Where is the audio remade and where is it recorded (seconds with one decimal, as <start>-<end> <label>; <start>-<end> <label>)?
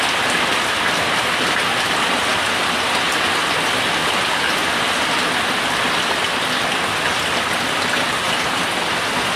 0.0-9.4 recorded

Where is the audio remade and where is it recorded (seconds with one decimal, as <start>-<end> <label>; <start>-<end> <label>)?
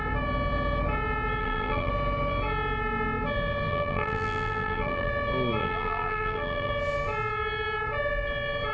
0.0-1.4 recorded; 1.4-1.9 remade; 1.9-3.7 recorded; 3.7-5.1 remade; 5.1-5.6 recorded; 5.6-6.7 remade; 6.7-8.7 recorded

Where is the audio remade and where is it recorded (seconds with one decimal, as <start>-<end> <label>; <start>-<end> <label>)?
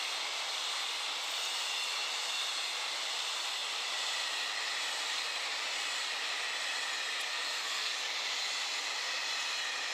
0.0-7.3 recorded; 7.3-7.9 remade; 7.9-9.9 recorded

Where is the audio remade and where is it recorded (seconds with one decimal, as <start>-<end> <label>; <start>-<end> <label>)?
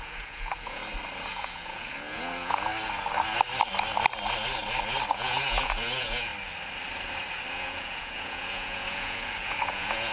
0.0-0.8 remade; 0.8-1.3 recorded; 1.3-2.7 remade; 2.7-5.1 recorded; 5.1-6.3 remade; 6.3-7.5 recorded; 7.5-10.1 remade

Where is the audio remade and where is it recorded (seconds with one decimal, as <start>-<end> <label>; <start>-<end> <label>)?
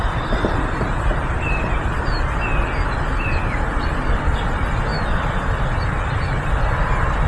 0.0-1.1 recorded; 1.1-1.8 remade; 1.8-7.3 recorded